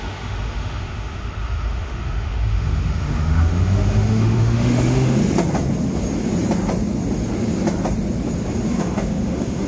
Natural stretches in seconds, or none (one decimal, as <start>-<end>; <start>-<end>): 5.2-8.7